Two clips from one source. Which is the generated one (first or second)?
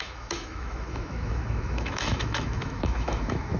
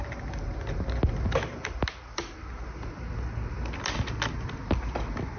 first